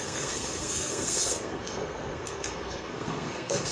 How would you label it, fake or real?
fake